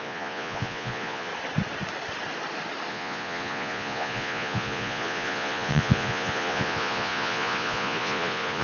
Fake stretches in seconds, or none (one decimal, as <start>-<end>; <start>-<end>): 0.0-1.3; 2.9-8.6